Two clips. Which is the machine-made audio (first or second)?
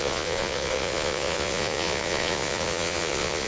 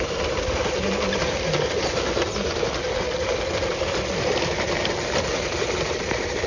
first